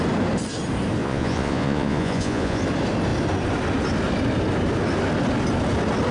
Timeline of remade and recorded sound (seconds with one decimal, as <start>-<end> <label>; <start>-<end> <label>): 0.0-1.0 recorded; 1.0-2.6 remade; 2.6-6.1 recorded